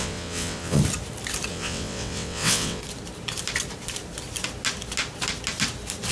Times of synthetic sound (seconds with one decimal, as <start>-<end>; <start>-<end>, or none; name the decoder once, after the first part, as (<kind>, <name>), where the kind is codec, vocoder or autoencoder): 0.0-0.8 (vocoder, WaveNeXt); 1.5-2.8

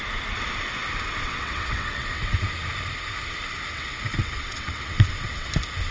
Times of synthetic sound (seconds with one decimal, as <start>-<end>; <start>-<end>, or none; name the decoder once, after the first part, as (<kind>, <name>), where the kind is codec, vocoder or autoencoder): 1.2-2.5 (vocoder, WaveNeXt); 3.7-5.5

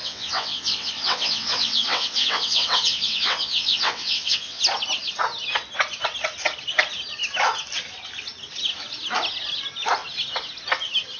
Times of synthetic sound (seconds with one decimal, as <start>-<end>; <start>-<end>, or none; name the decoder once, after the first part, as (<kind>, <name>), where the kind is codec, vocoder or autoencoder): 0.0-4.6 (vocoder, WaveNeXt)

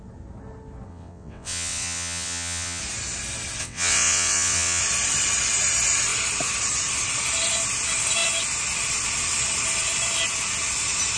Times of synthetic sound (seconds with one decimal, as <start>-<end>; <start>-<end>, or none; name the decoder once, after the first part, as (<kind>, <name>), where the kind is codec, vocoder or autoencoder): 0.9-2.8 (vocoder, WaveNeXt); 3.6-4.8

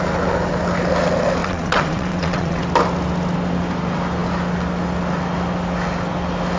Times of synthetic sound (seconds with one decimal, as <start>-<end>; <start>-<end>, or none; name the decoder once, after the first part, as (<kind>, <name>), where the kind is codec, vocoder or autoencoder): 1.4-2.6 (vocoder, WaveNeXt)

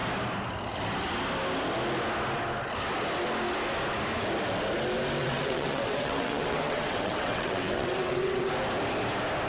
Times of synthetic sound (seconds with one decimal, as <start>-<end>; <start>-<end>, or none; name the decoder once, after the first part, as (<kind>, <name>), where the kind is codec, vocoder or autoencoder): 5.2-8.5 (vocoder, WaveNeXt)

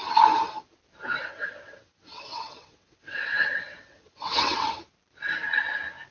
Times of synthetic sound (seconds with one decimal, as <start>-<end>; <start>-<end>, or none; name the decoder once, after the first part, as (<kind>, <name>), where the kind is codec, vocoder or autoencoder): 1.1-4.8 (vocoder, WaveNeXt)

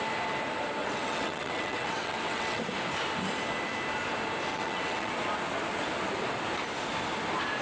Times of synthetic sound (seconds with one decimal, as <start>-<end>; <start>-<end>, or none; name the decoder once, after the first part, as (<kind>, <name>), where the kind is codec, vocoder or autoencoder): 0.8-2.6 (vocoder, WaveNeXt); 4.5-5.1